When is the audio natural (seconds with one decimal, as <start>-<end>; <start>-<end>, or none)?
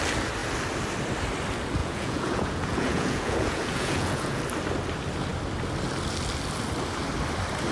0.0-1.8; 4.4-7.7